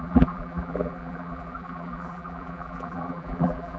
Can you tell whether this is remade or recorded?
remade